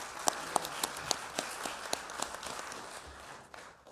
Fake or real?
real